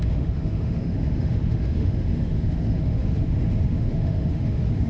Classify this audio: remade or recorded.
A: remade